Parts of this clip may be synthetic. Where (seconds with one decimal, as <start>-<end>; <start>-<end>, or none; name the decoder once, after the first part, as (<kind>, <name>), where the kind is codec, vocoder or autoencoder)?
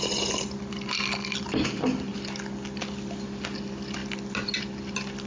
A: none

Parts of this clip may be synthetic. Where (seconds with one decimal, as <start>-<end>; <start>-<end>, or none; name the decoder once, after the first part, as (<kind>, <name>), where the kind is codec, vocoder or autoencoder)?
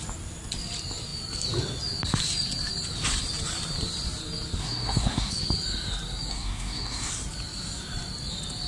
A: 4.6-5.3 (codec, SNAC); 6.3-7.1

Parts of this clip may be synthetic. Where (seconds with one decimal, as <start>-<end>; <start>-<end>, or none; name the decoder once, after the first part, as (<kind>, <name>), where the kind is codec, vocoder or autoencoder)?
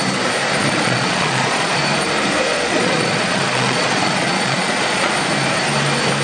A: 0.6-1.8 (vocoder, Vocos); 2.5-5.1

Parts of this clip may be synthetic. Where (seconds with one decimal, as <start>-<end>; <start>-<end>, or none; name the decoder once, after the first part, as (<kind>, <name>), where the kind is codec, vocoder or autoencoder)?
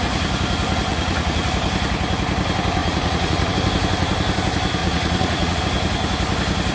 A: 0.9-1.5 (vocoder, Vocos); 2.8-3.5; 4.8-5.6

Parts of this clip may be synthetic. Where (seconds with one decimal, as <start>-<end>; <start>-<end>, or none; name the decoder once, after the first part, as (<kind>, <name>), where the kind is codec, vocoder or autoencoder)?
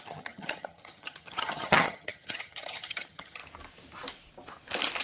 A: 0.0-3.4 (vocoder, HiFi-GAN)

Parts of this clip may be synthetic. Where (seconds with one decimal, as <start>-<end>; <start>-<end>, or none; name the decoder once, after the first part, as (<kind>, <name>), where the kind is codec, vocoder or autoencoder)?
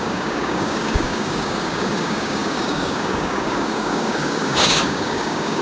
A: 0.0-5.6 (codec, DAC)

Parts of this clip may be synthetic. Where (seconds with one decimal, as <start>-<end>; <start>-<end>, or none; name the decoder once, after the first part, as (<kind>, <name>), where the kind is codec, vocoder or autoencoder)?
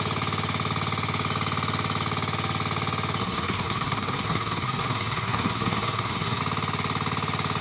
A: 3.2-6.4 (codec, SNAC)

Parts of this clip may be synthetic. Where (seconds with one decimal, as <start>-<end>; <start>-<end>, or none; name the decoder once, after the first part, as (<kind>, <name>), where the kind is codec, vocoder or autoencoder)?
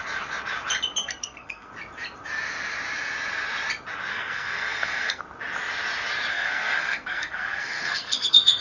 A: 1.0-1.7 (codec, SNAC); 4.1-5.2; 6.3-8.6